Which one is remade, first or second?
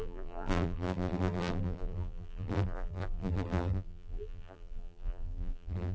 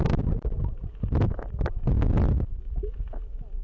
first